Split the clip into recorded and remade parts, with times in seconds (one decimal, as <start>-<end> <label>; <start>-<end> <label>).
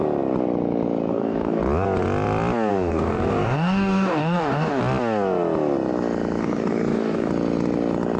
0.0-1.1 recorded; 1.1-1.6 remade; 1.6-2.7 recorded; 2.7-4.8 remade; 4.8-6.4 recorded; 6.4-7.3 remade; 7.3-8.2 recorded